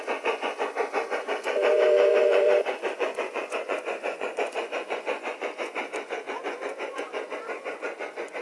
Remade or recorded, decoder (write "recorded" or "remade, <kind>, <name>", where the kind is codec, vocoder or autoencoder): remade, vocoder, Vocos